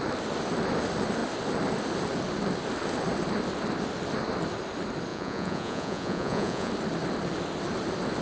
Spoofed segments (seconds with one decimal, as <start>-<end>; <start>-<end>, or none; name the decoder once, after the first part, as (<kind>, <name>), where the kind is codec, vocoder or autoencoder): 5.1-6.7 (vocoder, Vocos)